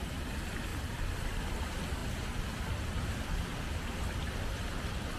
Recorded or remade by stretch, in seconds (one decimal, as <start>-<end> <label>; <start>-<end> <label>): 0.0-5.2 recorded